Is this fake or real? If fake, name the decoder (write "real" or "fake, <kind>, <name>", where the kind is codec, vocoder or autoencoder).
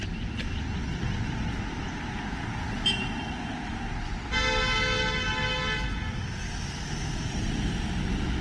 real